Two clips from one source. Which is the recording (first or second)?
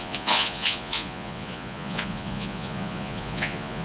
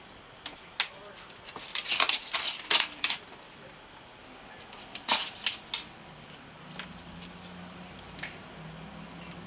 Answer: second